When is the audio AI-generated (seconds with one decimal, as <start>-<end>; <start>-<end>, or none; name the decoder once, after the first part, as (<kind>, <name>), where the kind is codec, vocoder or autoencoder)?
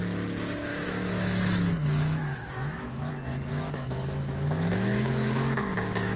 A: 0.7-3.1 (autoencoder, DAC-VAE); 3.5-6.2